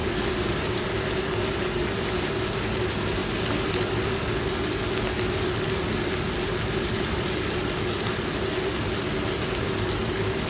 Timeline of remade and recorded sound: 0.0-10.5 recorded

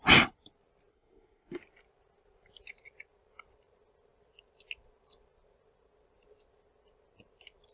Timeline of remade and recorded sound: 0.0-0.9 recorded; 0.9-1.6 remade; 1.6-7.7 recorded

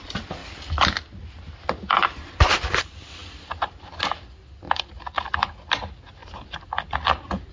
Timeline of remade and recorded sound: 0.0-7.5 recorded